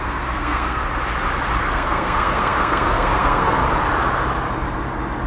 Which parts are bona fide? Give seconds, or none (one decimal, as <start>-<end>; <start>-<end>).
0.8-1.6; 3.6-5.3